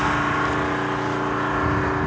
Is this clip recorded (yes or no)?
yes